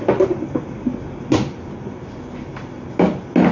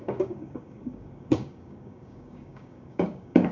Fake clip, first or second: second